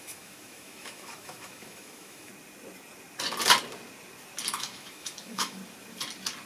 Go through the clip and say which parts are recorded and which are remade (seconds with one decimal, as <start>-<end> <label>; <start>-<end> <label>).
0.0-2.3 remade; 2.3-4.5 recorded; 4.5-5.6 remade; 5.6-6.5 recorded